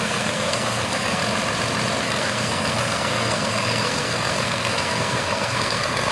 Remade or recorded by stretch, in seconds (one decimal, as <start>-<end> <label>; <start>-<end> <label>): 0.0-1.2 remade; 1.2-2.0 recorded; 2.0-6.1 remade